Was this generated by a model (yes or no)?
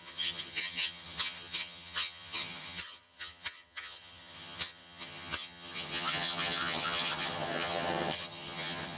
yes